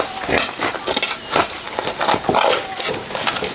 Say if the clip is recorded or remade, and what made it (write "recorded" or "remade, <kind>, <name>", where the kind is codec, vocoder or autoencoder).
recorded